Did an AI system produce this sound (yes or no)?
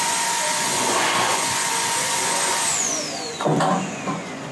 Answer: yes